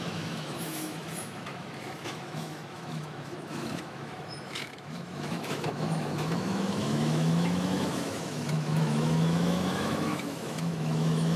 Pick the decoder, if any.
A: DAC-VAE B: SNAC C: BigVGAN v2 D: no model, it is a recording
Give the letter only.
A